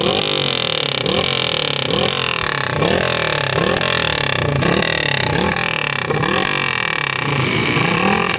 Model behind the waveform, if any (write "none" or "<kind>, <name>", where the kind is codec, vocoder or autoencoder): none